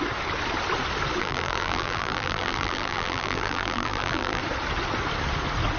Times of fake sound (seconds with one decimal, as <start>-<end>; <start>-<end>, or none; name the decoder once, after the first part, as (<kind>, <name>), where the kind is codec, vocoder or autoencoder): 1.2-4.4 (vocoder, BigVGAN v2)